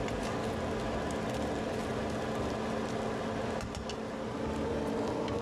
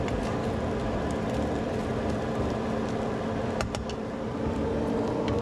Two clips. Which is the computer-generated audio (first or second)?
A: second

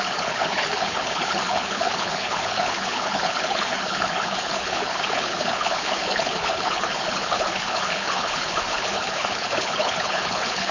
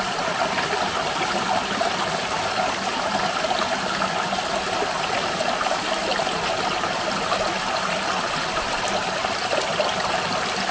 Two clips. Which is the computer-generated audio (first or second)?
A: first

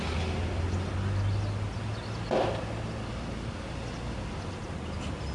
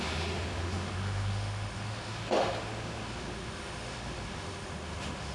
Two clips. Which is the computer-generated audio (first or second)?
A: second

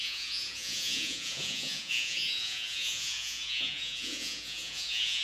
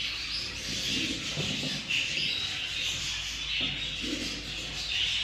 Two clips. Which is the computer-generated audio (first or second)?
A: first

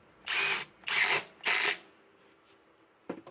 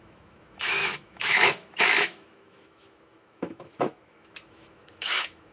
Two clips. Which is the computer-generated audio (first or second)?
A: second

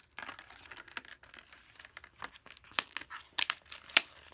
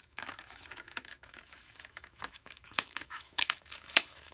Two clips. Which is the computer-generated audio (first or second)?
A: second